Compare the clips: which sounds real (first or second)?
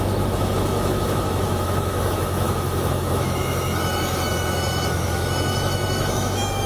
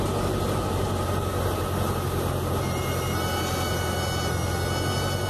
second